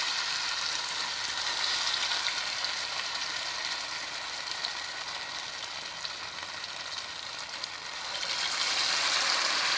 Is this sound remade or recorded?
remade